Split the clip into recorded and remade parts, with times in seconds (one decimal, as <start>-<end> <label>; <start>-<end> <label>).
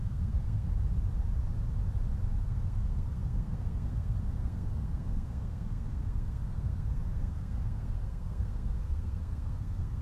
0.0-0.7 remade; 0.7-2.4 recorded; 2.4-10.0 remade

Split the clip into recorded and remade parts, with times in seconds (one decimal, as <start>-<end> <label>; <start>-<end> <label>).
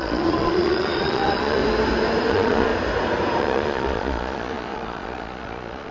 0.0-1.6 remade; 1.6-2.3 recorded; 2.3-2.7 remade; 2.7-3.4 recorded; 3.4-5.9 remade